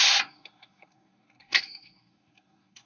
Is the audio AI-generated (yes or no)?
yes